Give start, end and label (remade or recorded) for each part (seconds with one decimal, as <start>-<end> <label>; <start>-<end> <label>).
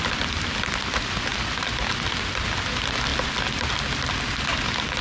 0.0-5.0 recorded